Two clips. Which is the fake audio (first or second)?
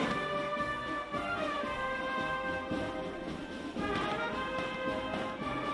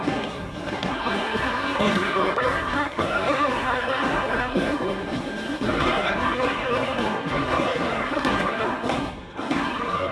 second